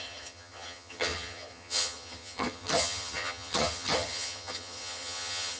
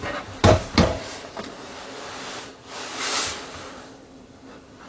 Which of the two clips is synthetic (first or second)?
first